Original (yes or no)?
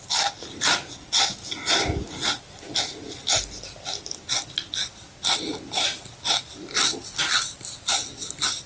yes